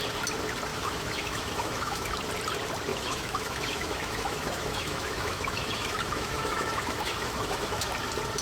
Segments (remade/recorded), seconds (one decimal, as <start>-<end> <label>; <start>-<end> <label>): 0.0-0.7 recorded; 0.7-2.1 remade; 2.1-2.9 recorded; 2.9-7.9 remade; 7.9-8.4 recorded